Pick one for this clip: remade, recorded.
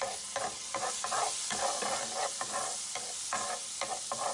recorded